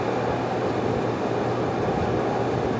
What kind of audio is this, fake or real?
real